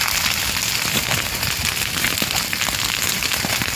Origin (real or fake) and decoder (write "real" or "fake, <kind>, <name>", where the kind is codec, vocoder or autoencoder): real